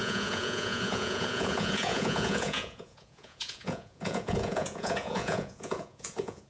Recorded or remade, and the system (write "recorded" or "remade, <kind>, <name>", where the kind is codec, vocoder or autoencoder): remade, vocoder, Vocos